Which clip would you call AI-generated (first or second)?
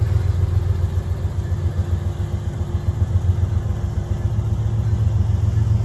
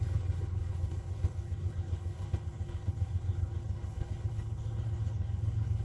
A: second